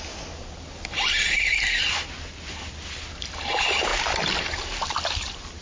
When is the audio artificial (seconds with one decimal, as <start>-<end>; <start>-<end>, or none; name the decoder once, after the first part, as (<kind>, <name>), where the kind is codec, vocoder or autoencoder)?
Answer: none